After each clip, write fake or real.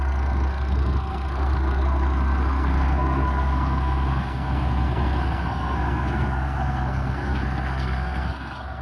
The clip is fake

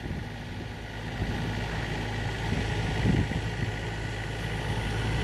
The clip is real